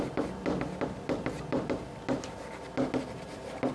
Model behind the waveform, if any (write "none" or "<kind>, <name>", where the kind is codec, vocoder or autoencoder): none